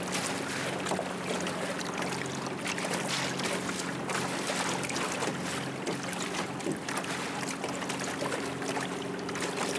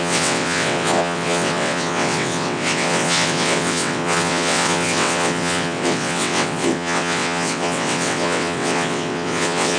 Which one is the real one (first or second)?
first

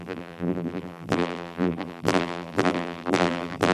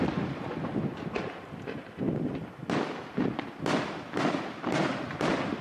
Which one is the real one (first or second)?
second